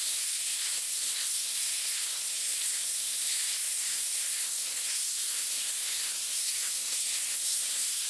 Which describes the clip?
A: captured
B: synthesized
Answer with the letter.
B